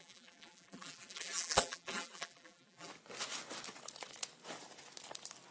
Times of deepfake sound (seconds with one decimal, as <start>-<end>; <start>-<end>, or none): 0.0-2.9